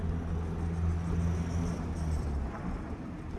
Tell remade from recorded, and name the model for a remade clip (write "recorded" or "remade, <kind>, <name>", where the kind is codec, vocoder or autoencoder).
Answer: recorded